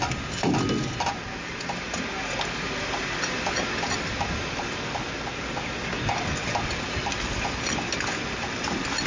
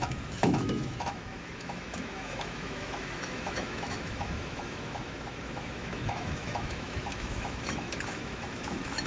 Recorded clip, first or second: first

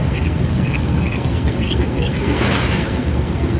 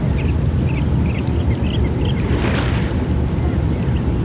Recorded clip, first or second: second